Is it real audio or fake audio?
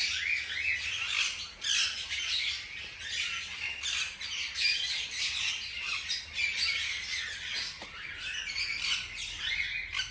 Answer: real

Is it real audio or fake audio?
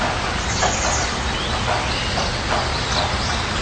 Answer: real